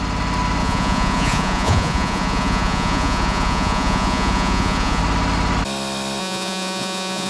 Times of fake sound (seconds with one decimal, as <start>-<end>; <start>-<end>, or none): 0.6-5.0; 6.2-7.3